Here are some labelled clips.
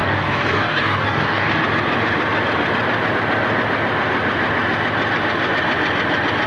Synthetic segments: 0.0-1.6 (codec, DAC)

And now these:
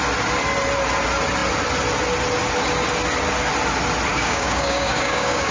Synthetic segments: 4.1-5.5 (codec, DAC)

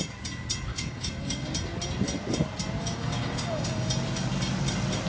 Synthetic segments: 0.7-1.5 (codec, DAC); 2.8-3.9

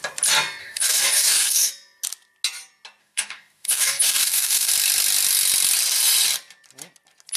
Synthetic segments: 0.6-1.7 (codec, DAC); 3.0-4.7